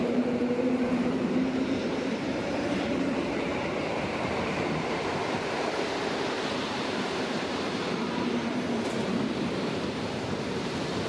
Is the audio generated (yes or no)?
yes